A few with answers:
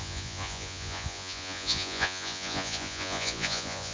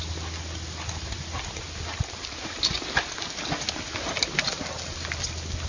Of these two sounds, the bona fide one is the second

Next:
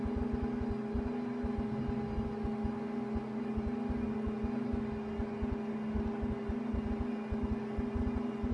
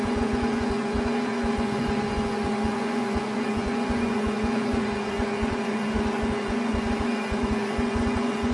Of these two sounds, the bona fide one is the first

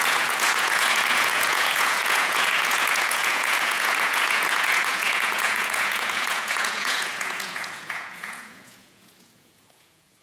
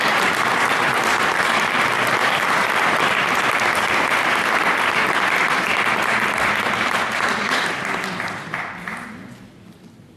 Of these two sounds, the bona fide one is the second